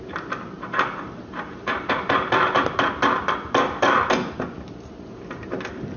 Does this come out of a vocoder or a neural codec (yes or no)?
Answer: no